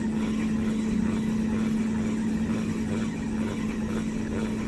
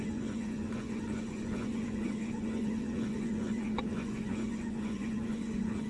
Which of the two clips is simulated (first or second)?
second